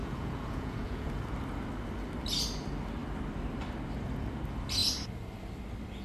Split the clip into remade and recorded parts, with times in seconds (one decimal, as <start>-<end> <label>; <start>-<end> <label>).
0.0-1.2 remade; 1.2-6.0 recorded